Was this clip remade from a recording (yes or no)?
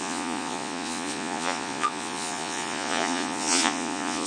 yes